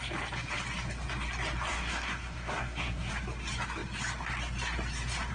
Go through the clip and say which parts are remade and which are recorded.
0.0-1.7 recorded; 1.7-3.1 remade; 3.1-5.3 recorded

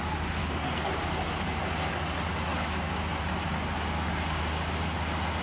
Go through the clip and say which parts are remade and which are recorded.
0.0-0.4 recorded; 0.4-0.9 remade; 0.9-5.4 recorded

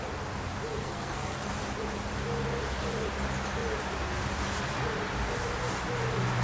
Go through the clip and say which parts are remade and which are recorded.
0.0-0.7 recorded; 0.7-1.5 remade; 1.5-6.4 recorded

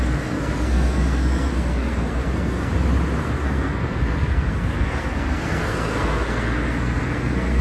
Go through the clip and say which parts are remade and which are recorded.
0.0-2.7 remade; 2.7-3.2 recorded; 3.2-7.6 remade

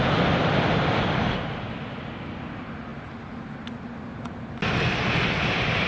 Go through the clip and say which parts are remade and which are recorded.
0.0-5.9 recorded

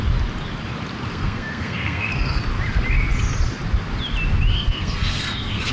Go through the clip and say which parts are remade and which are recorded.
0.0-1.1 recorded; 1.1-2.4 remade; 2.4-4.5 recorded; 4.5-5.7 remade